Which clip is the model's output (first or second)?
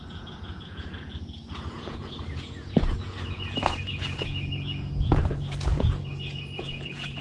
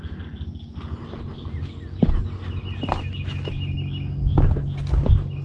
first